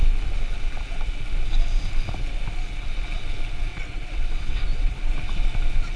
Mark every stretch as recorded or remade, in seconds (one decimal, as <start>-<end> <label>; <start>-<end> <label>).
0.0-3.7 recorded; 3.7-5.1 remade; 5.1-6.0 recorded